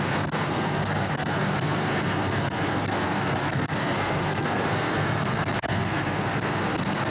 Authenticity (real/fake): fake